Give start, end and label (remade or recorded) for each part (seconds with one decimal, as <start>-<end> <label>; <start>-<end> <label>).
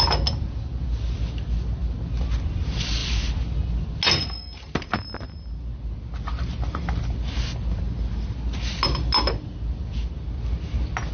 0.0-11.1 recorded